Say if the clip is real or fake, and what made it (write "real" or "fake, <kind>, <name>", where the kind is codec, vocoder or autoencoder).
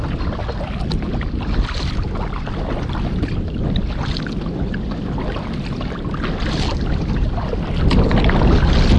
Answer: real